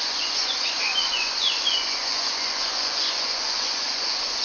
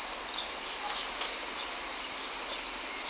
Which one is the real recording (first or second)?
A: second